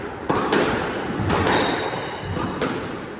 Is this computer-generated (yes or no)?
no